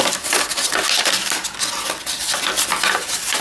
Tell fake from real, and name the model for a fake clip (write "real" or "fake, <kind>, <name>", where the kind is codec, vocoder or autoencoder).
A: real